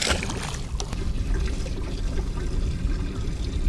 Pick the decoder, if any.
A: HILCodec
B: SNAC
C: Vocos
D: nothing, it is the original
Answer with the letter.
D